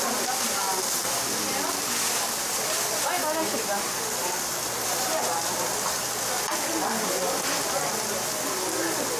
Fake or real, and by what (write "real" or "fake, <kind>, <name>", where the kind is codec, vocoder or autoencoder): real